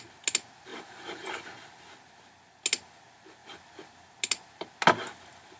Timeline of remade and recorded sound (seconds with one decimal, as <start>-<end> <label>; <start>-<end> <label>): 0.0-0.7 recorded; 0.7-1.3 remade; 1.3-5.6 recorded